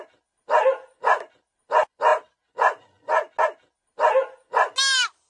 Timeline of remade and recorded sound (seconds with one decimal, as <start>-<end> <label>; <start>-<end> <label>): 0.0-5.3 recorded